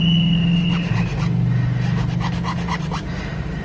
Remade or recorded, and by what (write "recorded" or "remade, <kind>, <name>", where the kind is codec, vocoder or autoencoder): recorded